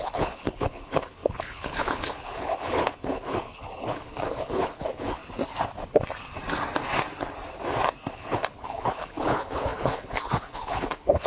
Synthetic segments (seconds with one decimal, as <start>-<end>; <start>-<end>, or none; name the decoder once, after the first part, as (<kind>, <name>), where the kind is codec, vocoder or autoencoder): 0.0-5.2 (codec, HILCodec); 8.1-11.3